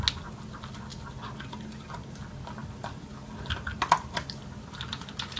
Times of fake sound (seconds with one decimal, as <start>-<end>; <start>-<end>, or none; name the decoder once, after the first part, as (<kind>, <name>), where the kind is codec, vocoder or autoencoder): none